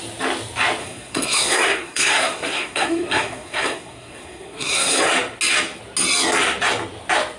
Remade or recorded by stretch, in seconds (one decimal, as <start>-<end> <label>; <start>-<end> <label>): 0.0-0.8 recorded; 0.8-5.0 remade; 5.0-7.4 recorded